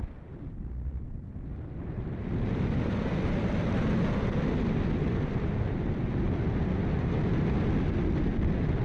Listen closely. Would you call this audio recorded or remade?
recorded